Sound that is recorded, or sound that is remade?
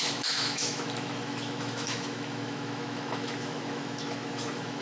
remade